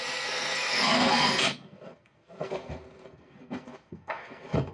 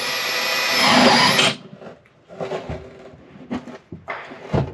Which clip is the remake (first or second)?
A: first